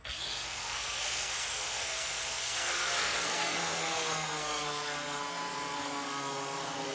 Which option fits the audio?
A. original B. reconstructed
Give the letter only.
B